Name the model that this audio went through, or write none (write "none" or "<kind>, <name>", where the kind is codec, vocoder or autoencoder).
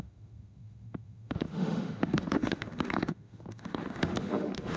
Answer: autoencoder, DAC-VAE